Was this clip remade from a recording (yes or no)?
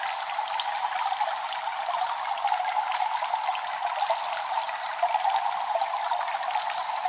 no